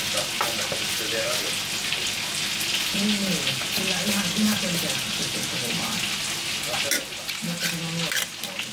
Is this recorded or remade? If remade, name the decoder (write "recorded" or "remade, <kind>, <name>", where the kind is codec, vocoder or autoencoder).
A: recorded